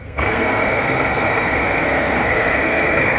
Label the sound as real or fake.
fake